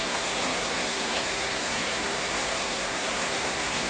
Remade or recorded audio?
remade